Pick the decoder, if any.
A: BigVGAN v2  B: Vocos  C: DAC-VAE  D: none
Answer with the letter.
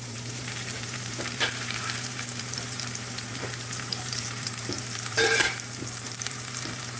A